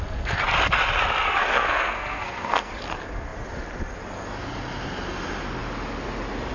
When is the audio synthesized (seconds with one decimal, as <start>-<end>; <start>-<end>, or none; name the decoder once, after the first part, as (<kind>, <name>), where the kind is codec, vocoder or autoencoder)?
1.4-2.7 (codec, SNAC)